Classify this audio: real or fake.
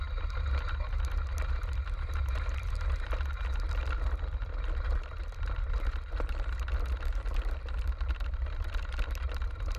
real